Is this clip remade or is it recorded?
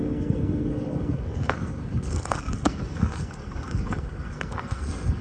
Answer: remade